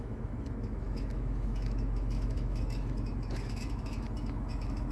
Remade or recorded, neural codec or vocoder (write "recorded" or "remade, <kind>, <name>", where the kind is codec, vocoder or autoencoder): remade, autoencoder, DAC-VAE